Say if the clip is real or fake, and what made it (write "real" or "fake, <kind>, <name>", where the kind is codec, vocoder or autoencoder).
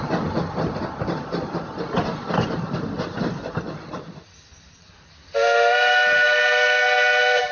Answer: real